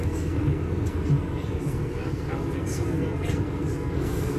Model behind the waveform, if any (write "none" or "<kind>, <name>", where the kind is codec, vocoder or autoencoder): codec, SNAC